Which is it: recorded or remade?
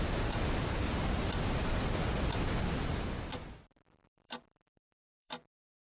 remade